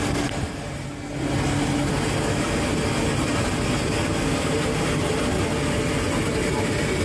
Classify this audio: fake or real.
real